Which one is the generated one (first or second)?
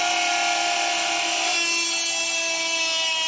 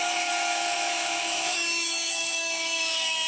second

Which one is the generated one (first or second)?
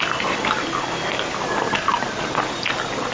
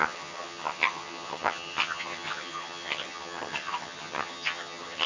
second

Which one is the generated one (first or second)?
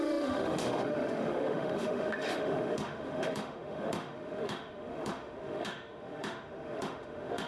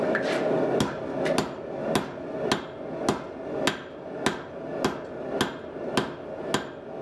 first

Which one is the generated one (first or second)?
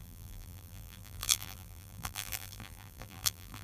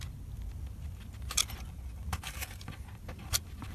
first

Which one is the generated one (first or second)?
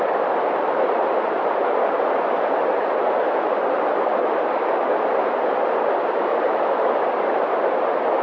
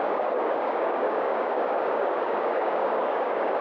second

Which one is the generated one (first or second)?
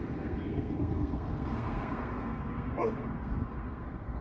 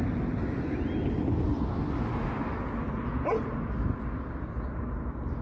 first